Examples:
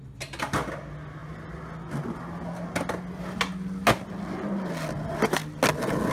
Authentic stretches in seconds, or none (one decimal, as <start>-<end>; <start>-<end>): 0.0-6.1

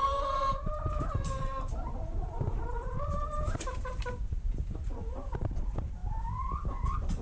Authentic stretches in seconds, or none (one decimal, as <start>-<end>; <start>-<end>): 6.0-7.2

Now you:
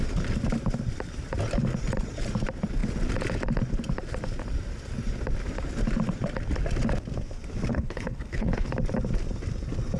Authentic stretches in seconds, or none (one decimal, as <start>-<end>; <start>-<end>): 0.0-7.7; 8.7-10.0